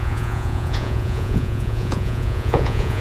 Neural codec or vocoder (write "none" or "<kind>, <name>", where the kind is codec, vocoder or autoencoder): vocoder, Vocos